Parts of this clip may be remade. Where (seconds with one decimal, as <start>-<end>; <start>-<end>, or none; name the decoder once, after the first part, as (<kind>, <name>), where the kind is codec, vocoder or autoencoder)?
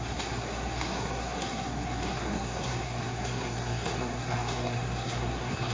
0.0-5.7 (codec, SNAC)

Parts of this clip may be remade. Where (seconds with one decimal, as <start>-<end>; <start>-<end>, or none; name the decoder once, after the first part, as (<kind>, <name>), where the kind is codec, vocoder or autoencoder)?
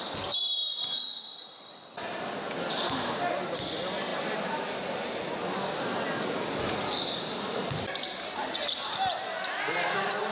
none